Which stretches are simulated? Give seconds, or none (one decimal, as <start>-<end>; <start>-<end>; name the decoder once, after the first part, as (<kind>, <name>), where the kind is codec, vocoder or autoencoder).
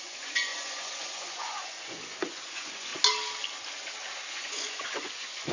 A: 0.0-2.9 (vocoder, Vocos); 4.3-5.5